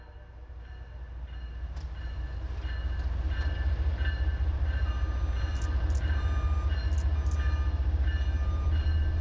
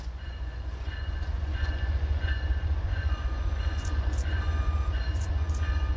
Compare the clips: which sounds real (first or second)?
first